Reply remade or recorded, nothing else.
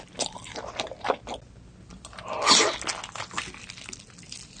recorded